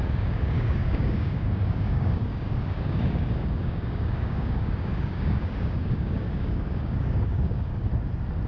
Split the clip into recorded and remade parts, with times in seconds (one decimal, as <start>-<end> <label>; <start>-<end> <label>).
0.0-7.9 remade; 7.9-8.5 recorded